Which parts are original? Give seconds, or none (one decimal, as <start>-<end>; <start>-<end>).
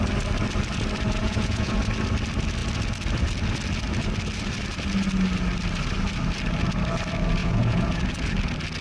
0.0-1.2; 1.8-7.4; 8.0-8.8